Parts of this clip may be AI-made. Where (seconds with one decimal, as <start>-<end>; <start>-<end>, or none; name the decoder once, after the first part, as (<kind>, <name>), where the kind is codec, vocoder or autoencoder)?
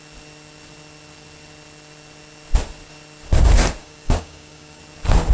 3.8-4.8 (codec, DAC)